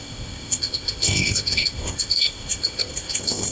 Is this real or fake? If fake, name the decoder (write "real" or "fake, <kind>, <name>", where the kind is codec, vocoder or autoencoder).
fake, codec, ZipCodec